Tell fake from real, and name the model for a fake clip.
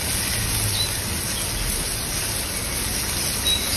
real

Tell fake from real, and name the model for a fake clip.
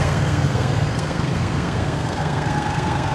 fake, codec, SNAC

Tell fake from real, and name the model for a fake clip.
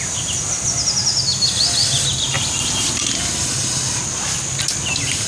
real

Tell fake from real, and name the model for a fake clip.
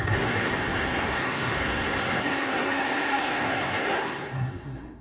fake, codec, SNAC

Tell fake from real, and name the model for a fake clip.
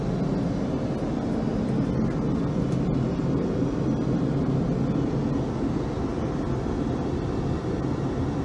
real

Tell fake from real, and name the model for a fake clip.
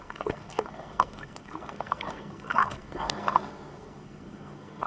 fake, codec, SNAC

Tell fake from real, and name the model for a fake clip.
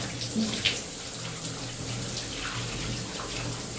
real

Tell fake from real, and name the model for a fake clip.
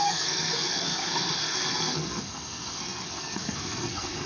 fake, codec, SNAC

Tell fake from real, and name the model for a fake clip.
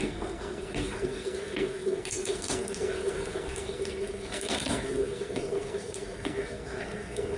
fake, codec, SNAC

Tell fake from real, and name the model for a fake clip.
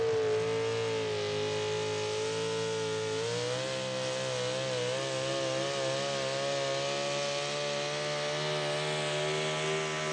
real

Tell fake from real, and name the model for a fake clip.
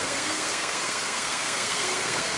fake, codec, SNAC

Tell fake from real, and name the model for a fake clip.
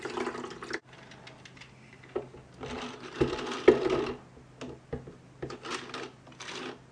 real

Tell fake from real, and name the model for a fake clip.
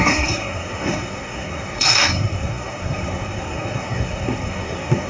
fake, codec, SNAC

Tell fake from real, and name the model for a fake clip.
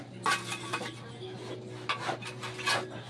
real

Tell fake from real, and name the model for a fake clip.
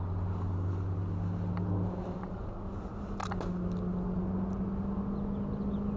real